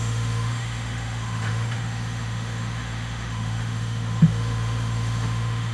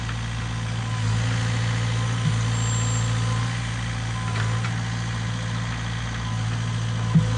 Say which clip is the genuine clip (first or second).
second